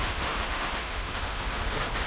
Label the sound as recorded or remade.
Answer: remade